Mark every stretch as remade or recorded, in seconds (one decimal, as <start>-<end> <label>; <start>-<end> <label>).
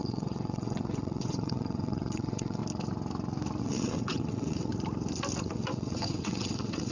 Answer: 0.0-2.6 remade; 2.6-3.6 recorded; 3.6-4.7 remade; 4.7-5.4 recorded; 5.4-6.9 remade